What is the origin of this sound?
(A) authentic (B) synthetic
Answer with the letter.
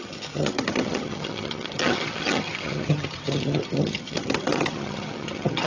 B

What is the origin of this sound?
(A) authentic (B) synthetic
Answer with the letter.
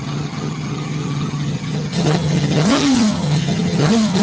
B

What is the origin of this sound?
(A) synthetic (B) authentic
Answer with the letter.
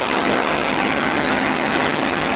A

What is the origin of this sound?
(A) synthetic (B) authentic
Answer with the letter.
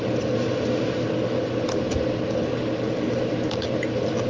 B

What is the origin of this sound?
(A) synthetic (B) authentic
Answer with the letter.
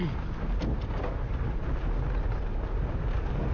B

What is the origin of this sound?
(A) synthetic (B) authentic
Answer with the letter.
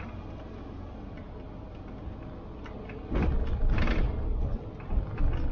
B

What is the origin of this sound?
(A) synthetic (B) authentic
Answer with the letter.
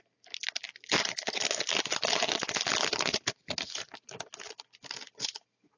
B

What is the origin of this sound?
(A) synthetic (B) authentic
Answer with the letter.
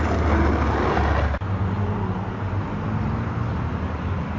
B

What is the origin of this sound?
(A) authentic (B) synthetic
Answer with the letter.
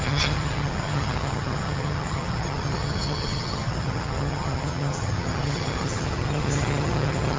B